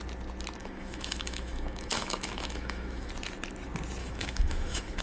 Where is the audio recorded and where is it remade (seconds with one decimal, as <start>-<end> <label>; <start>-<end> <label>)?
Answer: 0.0-0.6 recorded; 0.6-3.1 remade; 3.1-4.0 recorded; 4.0-5.0 remade